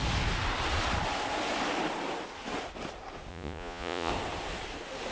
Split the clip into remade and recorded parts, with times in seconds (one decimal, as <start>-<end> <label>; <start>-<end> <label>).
0.0-3.3 recorded; 3.3-4.1 remade; 4.1-5.1 recorded